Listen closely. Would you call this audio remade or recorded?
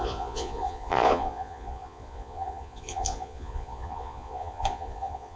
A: remade